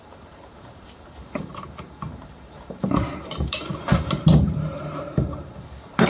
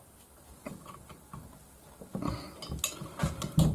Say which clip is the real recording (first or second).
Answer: second